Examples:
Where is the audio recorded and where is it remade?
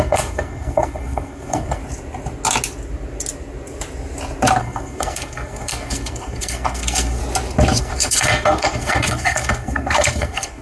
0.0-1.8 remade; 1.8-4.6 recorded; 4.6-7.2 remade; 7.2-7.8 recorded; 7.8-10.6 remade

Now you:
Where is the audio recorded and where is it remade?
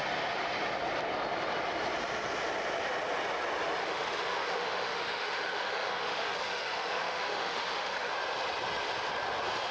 0.0-3.8 recorded; 3.8-8.1 remade; 8.1-9.7 recorded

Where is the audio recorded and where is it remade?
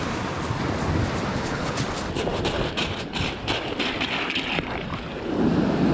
0.0-1.3 recorded; 1.3-1.8 remade; 1.8-5.9 recorded